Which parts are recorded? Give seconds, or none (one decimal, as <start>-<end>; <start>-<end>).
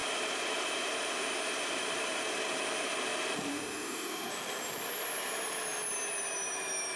0.0-3.5; 4.3-7.0